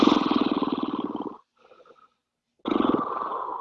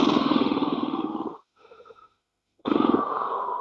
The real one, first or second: first